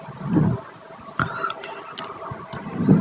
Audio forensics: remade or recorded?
recorded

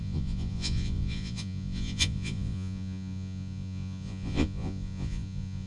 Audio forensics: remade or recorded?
remade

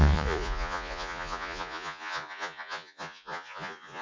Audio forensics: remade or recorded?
remade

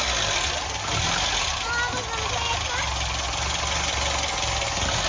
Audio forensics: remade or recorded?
recorded